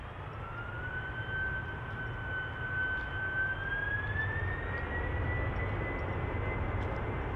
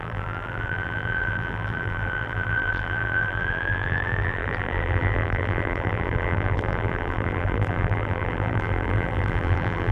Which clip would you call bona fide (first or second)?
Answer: first